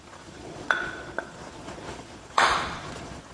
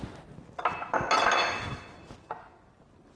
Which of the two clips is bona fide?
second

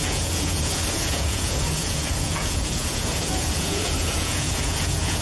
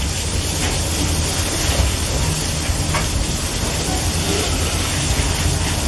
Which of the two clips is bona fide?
second